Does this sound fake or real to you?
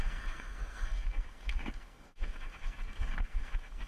fake